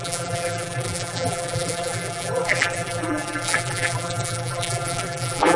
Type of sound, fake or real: fake